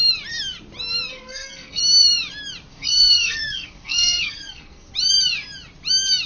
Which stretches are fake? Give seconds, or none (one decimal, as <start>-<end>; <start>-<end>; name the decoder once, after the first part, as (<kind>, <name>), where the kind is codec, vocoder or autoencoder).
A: 1.1-1.8 (codec, SNAC); 2.7-4.9